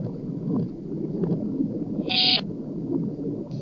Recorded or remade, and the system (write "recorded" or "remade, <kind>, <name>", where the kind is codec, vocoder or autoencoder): recorded